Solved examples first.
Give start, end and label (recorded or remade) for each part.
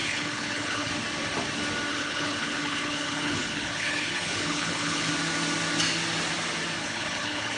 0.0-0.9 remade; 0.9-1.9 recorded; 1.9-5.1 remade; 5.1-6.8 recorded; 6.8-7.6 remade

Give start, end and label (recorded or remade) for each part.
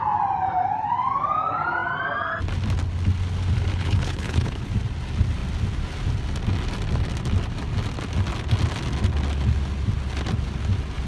0.0-3.7 recorded; 3.7-4.7 remade; 4.7-11.1 recorded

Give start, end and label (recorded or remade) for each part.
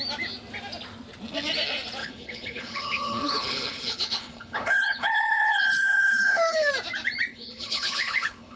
0.0-2.0 recorded; 2.0-6.7 remade; 6.7-7.3 recorded; 7.3-8.6 remade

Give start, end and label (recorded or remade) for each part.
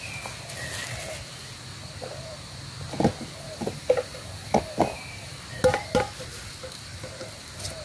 0.0-7.8 recorded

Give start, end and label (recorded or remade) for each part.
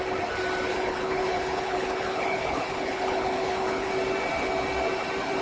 0.0-0.7 recorded; 0.7-3.9 remade; 3.9-5.4 recorded